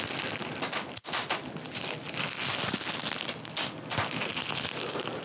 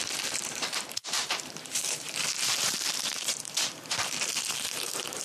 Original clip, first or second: first